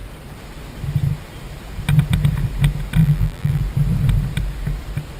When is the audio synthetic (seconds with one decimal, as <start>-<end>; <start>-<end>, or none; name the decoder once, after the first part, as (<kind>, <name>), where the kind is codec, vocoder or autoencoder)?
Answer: 3.0-3.6 (vocoder, BigVGAN v2)